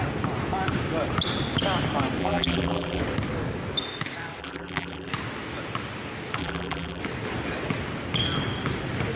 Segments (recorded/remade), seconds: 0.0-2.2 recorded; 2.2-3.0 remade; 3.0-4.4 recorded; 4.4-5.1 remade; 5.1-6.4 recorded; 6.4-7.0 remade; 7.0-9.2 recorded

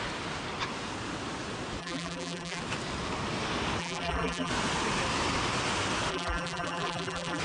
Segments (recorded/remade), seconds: 0.0-1.8 recorded; 1.8-2.6 remade; 2.6-3.8 recorded; 3.8-4.5 remade; 4.5-6.1 recorded; 6.1-7.4 remade

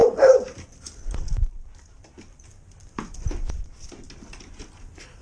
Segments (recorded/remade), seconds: 0.0-3.1 remade; 3.1-5.2 recorded

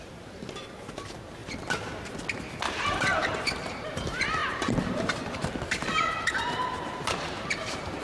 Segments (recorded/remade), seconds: 0.0-1.4 remade; 1.4-2.3 recorded; 2.3-8.0 remade

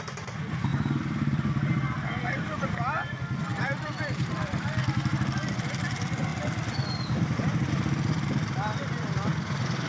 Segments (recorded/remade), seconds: 0.0-0.7 recorded; 0.7-1.5 remade; 1.5-3.5 recorded; 3.5-5.7 remade; 5.7-9.9 recorded

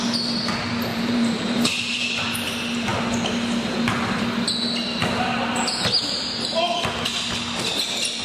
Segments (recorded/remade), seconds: 0.0-0.9 recorded; 0.9-2.1 remade; 2.1-8.2 recorded